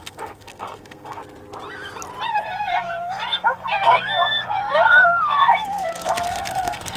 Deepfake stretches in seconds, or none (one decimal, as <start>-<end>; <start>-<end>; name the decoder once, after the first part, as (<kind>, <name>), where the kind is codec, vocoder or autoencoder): 0.0-1.2 (codec, SNAC); 2.3-7.0

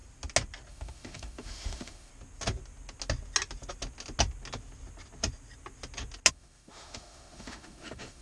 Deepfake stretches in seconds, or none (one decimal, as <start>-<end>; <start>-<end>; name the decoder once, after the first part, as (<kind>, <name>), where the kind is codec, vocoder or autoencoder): 0.7-2.1 (autoencoder, DAC-VAE); 6.3-8.2

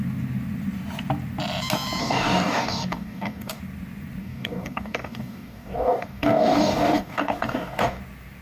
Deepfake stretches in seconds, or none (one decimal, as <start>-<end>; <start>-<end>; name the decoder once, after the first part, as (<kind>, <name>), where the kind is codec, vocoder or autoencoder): 2.0-3.6 (codec, DAC); 4.2-8.0

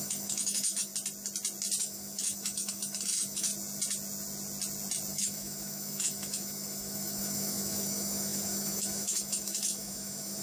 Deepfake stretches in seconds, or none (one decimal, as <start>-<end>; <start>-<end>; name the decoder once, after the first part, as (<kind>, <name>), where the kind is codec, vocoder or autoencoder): 0.0-0.9 (autoencoder, DAC-VAE); 1.8-3.5; 5.1-10.4